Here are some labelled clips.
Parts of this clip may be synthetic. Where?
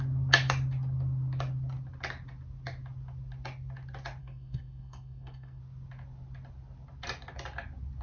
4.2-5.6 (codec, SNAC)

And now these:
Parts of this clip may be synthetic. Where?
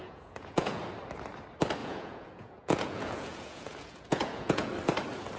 0.0-0.8 (vocoder, Vocos); 1.8-4.7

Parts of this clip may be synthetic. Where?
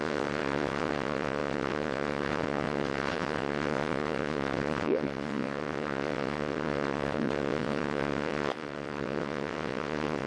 0.0-10.3 (vocoder, WaveNeXt)